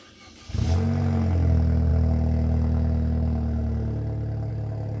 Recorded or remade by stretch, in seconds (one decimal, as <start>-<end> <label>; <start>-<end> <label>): 0.0-5.0 recorded